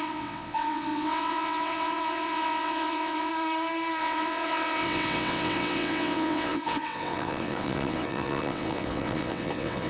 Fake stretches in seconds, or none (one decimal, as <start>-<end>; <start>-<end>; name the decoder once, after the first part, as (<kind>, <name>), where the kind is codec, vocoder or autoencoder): 0.0-3.3 (vocoder, WaveNeXt); 4.0-9.9